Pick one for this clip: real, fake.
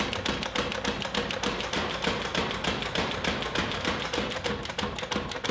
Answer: real